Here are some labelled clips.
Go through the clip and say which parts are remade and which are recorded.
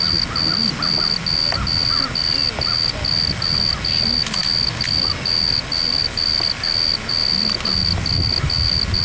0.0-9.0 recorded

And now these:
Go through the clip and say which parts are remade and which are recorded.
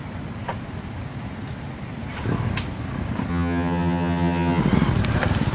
0.0-3.3 recorded; 3.3-4.6 remade; 4.6-5.5 recorded